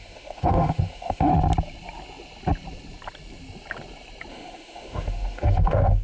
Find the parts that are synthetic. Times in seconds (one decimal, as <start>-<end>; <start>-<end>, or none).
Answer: 0.0-1.3; 4.3-6.0